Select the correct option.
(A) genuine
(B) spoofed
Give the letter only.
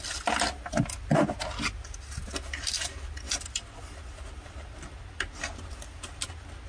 A